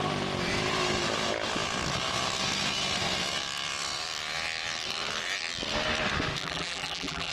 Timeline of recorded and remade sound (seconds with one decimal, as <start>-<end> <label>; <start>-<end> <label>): 0.0-6.4 recorded; 6.4-7.3 remade